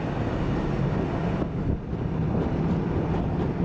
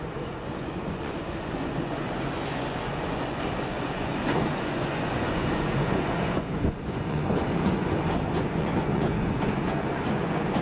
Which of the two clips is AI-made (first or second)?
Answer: second